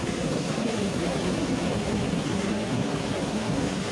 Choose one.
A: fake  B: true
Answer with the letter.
A